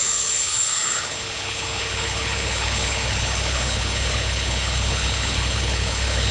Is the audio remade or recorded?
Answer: remade